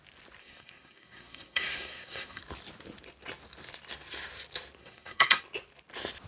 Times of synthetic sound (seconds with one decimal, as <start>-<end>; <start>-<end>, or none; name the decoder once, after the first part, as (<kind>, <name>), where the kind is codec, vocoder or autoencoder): 0.4-2.4 (codec, SNAC); 4.8-5.4

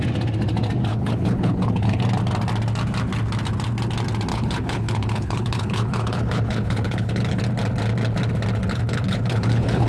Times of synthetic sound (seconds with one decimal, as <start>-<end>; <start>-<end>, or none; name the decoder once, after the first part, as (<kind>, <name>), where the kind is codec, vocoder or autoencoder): 0.9-2.0 (codec, HILCodec); 4.3-7.4; 8.7-9.9

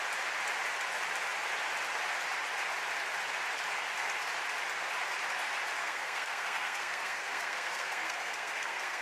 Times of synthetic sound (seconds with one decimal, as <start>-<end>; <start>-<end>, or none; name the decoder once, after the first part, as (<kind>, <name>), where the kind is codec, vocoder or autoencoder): 5.8-9.0 (codec, SNAC)